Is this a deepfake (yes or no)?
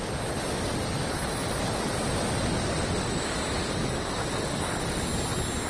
no